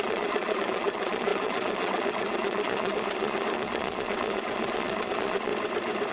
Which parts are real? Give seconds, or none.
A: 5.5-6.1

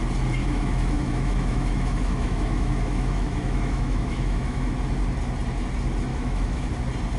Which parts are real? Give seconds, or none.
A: 0.0-0.4; 4.7-6.1; 6.7-7.2

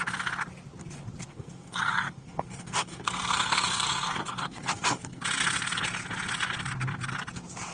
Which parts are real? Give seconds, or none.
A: 0.0-1.3; 5.2-7.7

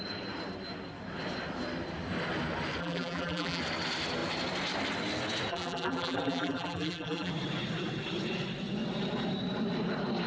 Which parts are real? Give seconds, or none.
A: 0.0-2.8; 3.6-5.5; 7.3-10.3

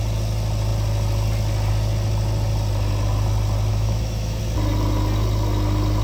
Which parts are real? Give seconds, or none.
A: 0.0-3.7; 4.4-6.0

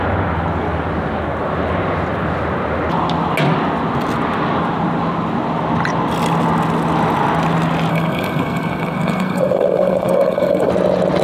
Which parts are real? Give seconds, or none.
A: 0.0-7.9; 10.7-11.2